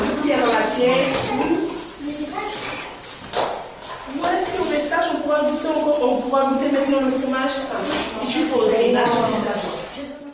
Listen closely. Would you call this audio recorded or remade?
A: recorded